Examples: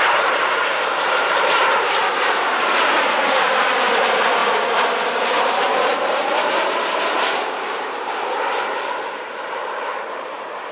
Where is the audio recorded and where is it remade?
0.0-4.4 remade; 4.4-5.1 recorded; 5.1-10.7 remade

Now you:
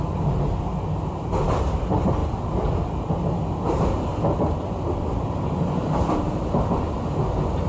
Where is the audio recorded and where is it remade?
0.0-7.7 recorded

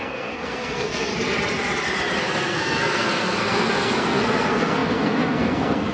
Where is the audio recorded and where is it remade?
0.0-1.1 remade; 1.1-2.2 recorded; 2.2-5.9 remade

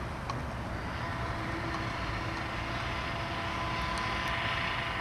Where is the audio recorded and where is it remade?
0.0-1.1 recorded; 1.1-2.1 remade; 2.1-5.0 recorded

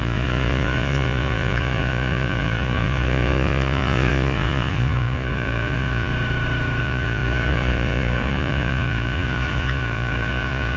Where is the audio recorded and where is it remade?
0.0-6.1 remade; 6.1-6.8 recorded; 6.8-10.8 remade